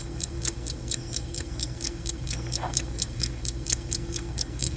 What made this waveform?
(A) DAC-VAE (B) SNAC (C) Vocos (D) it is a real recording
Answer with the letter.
B